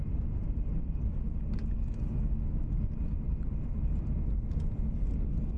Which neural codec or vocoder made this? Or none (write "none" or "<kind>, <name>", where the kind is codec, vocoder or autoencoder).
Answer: none